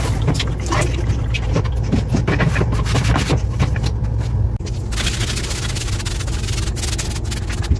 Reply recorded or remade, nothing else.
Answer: recorded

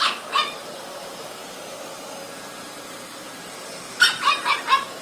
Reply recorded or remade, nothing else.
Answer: remade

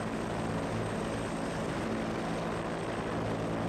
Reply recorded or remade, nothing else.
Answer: recorded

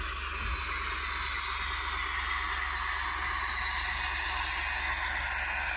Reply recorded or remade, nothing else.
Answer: recorded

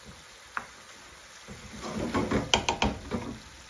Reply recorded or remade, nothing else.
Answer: recorded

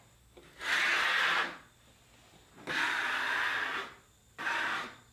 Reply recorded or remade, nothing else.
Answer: recorded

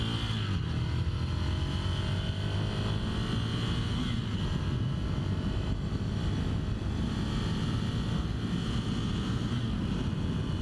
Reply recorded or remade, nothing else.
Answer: recorded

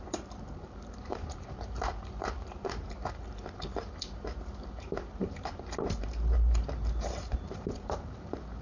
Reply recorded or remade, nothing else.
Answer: remade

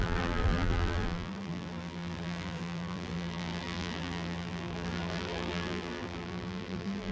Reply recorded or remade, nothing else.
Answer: remade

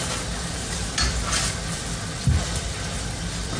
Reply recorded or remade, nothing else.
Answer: recorded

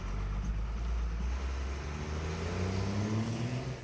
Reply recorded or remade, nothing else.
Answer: recorded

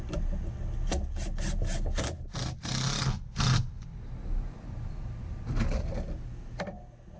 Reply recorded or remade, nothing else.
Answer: recorded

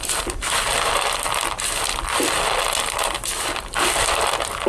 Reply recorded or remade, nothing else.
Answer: recorded